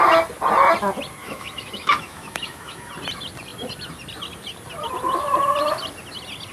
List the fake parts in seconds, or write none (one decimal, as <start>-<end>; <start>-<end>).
1.2-2.9